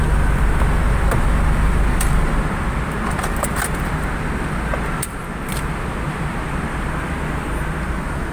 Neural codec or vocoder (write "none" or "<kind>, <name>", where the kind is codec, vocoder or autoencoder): none